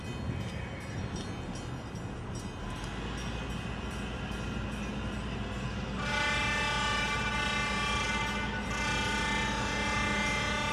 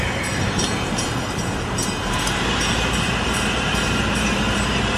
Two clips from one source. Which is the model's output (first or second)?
second